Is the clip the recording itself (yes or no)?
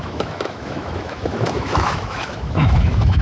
no